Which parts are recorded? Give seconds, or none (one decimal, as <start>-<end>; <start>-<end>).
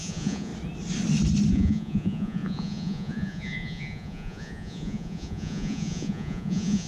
0.5-1.5